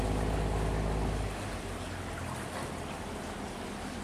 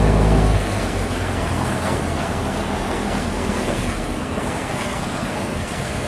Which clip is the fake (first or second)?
second